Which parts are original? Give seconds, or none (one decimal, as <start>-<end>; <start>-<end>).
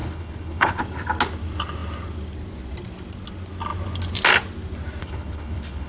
0.8-5.0